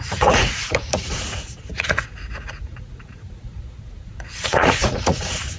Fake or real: fake